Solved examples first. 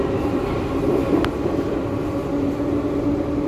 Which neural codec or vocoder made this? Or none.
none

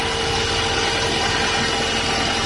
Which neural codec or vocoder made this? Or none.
none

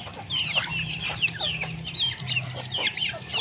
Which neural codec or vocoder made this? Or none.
none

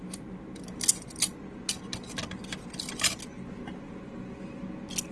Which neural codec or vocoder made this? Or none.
none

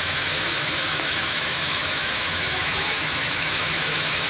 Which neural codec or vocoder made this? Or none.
autoencoder, DAC-VAE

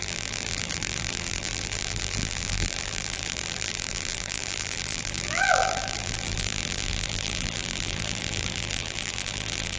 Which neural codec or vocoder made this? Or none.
vocoder, BigVGAN v2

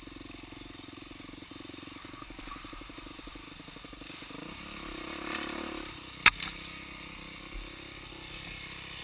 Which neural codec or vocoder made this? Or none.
none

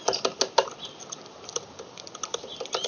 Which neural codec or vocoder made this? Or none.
none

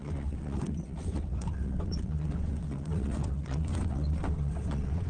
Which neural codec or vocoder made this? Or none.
vocoder, WaveNeXt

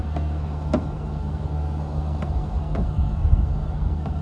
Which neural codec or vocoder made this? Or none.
codec, SNAC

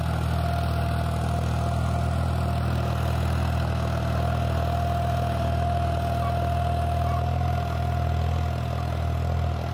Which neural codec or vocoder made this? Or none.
none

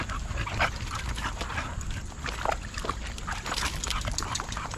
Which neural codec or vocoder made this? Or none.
none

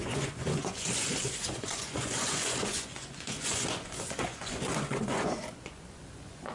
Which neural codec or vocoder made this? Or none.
vocoder, Vocos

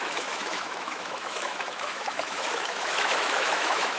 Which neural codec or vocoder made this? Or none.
autoencoder, DAC-VAE